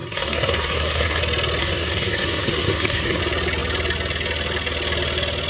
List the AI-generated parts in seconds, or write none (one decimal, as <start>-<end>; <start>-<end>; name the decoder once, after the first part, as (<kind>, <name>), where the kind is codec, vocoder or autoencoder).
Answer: 0.0-1.2 (codec, SNAC); 1.6-3.2